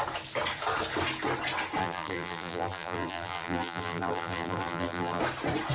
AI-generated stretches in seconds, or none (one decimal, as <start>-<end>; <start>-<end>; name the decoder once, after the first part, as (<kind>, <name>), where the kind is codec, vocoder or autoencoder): 1.8-5.2 (vocoder, BigVGAN v2)